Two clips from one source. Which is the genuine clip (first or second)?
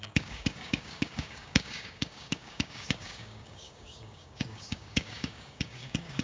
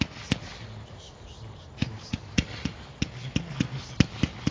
second